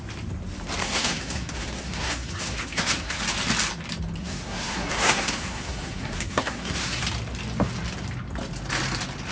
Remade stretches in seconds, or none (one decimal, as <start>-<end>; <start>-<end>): 0.8-3.2; 4.2-7.0